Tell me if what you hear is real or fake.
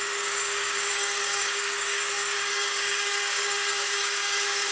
fake